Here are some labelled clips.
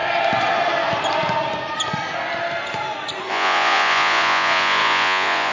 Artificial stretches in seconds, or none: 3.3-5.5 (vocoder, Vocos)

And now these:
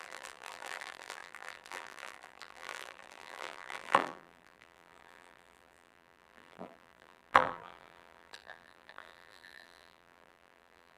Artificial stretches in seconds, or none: 0.0-11.0 (vocoder, BigVGAN v2)

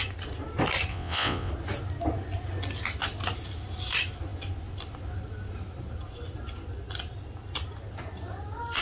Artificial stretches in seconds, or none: 0.9-1.5 (vocoder, WaveNeXt)